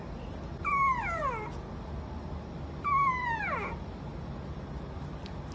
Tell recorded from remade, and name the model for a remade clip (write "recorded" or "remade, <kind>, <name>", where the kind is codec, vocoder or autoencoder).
recorded